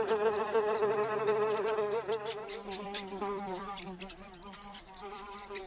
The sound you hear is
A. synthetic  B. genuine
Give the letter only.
A